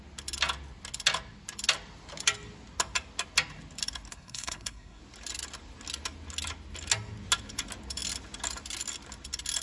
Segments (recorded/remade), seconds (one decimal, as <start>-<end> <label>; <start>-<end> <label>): 0.0-4.1 recorded; 4.1-5.0 remade; 5.0-9.6 recorded